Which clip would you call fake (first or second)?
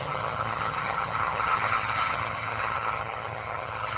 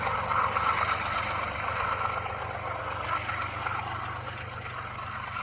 first